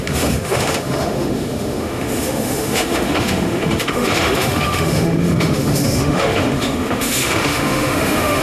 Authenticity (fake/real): fake